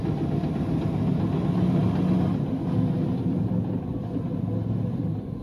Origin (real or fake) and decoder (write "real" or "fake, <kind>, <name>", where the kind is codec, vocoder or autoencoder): real